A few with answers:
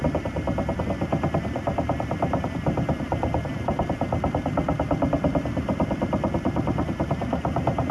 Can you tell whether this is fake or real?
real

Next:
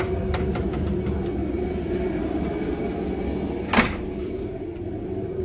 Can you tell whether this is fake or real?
real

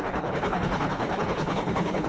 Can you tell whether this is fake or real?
fake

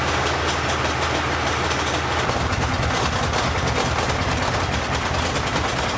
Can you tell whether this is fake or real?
real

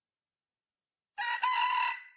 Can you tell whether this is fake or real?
real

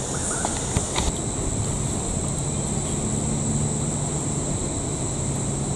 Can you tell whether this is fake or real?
real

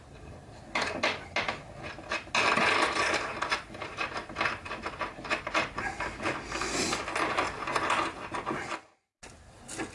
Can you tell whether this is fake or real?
real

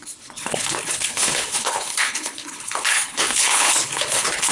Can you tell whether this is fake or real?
fake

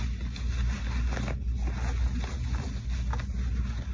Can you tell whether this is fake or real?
real